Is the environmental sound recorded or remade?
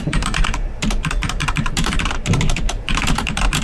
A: remade